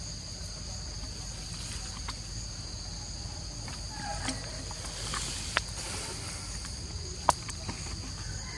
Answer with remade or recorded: recorded